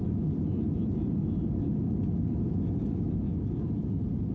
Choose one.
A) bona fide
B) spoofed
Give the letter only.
A